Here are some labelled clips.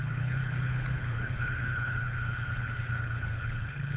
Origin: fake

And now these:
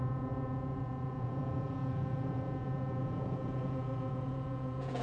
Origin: fake